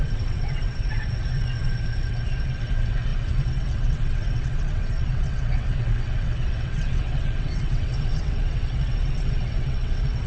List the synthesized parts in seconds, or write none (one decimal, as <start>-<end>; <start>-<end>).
0.0-10.3